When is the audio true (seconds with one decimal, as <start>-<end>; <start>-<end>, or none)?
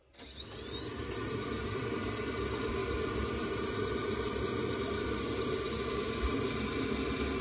0.0-0.9; 2.1-2.8; 6.7-7.4